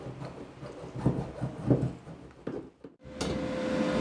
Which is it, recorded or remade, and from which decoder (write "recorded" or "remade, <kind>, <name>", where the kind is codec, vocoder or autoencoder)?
recorded